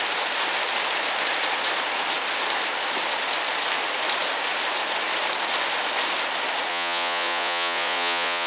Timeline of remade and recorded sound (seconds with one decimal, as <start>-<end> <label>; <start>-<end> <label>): 0.0-6.7 recorded; 6.7-8.5 remade